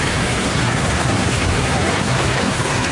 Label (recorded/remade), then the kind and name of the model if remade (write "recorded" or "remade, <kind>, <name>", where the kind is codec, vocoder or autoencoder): remade, codec, SNAC